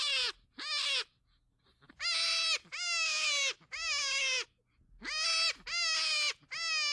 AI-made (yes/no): no